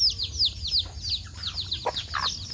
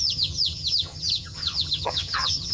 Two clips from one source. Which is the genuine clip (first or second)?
first